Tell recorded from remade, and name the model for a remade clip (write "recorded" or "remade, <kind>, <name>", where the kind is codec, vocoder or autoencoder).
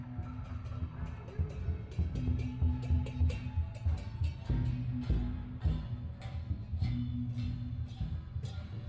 recorded